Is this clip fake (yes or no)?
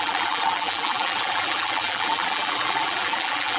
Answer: yes